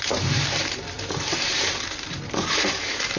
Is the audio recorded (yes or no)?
no